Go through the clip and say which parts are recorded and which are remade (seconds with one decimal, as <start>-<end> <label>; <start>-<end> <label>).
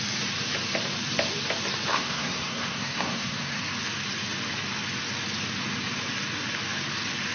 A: 0.0-1.9 recorded; 1.9-3.6 remade; 3.6-7.3 recorded